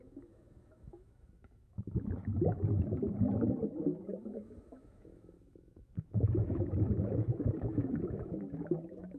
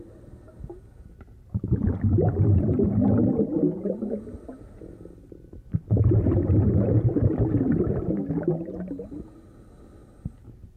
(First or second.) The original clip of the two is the second